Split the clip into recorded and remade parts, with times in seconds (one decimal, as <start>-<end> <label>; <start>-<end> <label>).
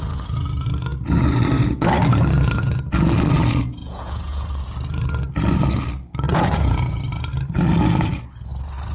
0.0-3.8 recorded; 3.8-4.5 remade; 4.5-6.3 recorded; 6.3-7.0 remade; 7.0-8.9 recorded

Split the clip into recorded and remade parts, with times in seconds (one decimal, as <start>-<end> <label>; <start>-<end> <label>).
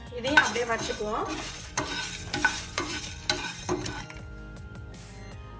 0.0-0.4 recorded; 0.4-1.8 remade; 1.8-2.4 recorded; 2.4-3.0 remade; 3.0-5.6 recorded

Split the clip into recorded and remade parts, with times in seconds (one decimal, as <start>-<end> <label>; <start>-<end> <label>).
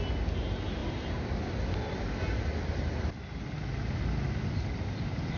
0.0-5.4 recorded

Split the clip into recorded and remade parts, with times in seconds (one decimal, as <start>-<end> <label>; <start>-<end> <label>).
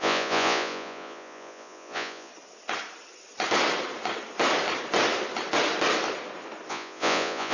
0.0-2.3 remade; 2.3-6.7 recorded; 6.7-7.5 remade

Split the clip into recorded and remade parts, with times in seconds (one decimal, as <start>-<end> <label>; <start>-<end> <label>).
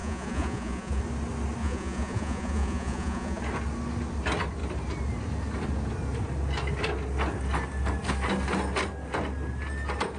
0.0-1.0 remade; 1.0-1.6 recorded; 1.6-3.4 remade; 3.4-10.2 recorded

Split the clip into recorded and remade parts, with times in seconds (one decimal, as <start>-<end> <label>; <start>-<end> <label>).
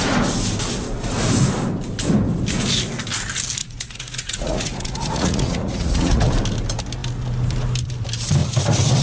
0.0-3.6 recorded; 3.6-6.3 remade; 6.3-9.0 recorded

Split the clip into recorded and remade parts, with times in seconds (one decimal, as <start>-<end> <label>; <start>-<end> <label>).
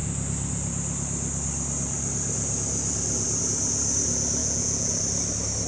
0.0-4.4 recorded; 4.4-5.0 remade; 5.0-5.7 recorded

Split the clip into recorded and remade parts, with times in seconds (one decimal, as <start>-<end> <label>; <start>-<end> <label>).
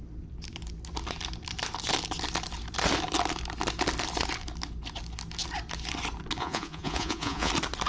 0.0-6.4 recorded; 6.4-7.5 remade; 7.5-7.9 recorded